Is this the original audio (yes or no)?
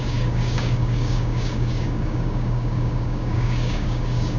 no